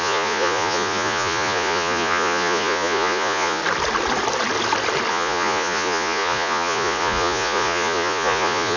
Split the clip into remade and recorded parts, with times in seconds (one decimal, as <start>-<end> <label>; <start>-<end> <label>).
0.0-3.6 remade; 3.6-5.1 recorded; 5.1-8.8 remade